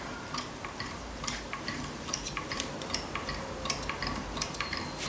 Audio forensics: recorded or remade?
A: remade